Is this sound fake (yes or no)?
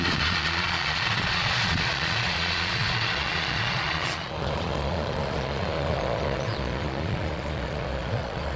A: yes